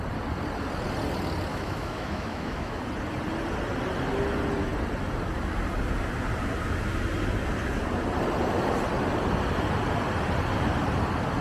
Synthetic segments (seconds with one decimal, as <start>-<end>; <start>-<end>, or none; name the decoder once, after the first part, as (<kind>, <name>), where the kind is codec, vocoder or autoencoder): 1.5-2.8 (autoencoder, DAC-VAE)